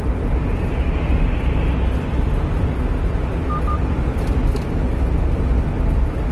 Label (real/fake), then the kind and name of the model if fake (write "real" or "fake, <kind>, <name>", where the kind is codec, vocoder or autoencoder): real